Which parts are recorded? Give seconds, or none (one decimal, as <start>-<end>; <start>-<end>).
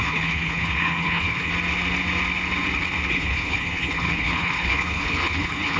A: 1.5-3.1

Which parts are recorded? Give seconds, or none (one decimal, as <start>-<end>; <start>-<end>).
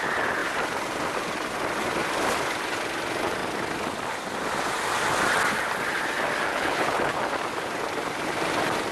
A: 0.0-6.5; 7.2-8.9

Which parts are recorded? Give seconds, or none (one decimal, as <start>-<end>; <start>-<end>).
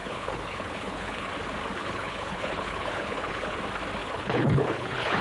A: 1.3-1.8; 3.6-4.0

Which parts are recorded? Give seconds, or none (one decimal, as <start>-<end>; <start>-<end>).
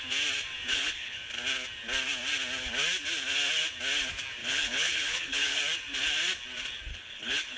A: 0.0-0.7; 1.2-4.4; 5.6-6.9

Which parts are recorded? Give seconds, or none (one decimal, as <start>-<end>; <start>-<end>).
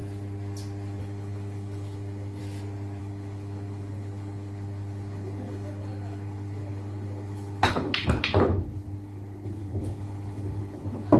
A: 0.0-1.0; 2.4-3.0